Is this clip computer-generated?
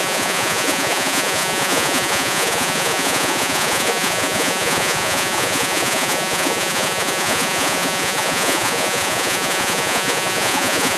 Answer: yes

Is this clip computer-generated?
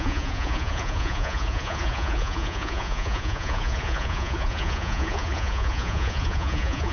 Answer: yes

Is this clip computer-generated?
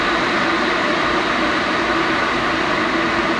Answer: yes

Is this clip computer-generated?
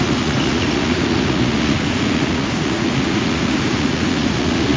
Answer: yes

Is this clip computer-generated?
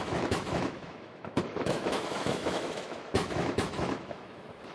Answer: yes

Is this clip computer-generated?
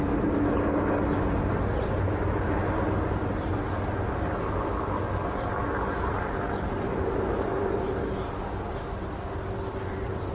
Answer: no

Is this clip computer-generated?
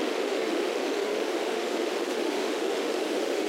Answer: yes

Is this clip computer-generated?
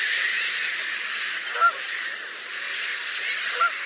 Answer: no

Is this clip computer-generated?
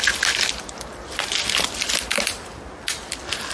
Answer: no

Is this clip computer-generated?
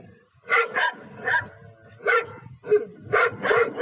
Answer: no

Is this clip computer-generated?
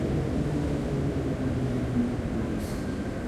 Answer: no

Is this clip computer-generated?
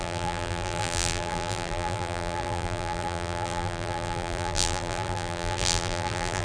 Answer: yes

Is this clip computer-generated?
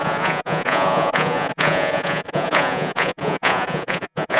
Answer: yes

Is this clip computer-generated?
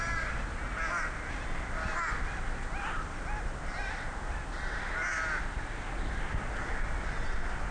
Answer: no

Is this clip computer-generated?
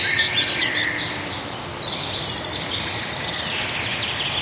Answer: no